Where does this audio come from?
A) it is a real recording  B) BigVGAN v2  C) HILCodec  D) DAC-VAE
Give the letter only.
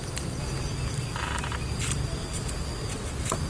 A